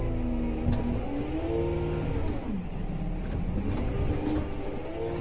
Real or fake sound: real